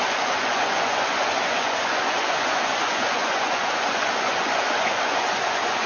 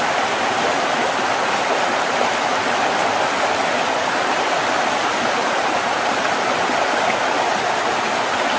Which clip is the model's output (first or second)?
first